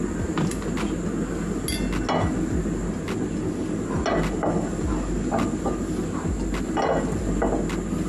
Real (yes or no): yes